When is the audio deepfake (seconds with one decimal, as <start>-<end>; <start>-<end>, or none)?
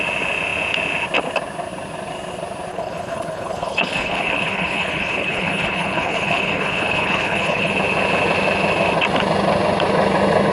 2.7-7.7